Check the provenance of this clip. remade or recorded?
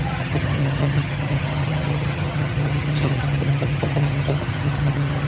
remade